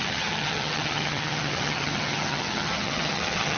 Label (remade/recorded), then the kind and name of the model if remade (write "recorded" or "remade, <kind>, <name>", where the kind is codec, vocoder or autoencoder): remade, vocoder, HiFi-GAN